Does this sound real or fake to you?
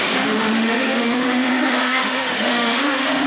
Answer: fake